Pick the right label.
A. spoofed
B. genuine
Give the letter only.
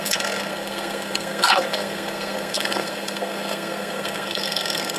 A